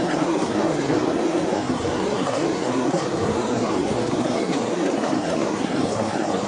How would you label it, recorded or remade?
remade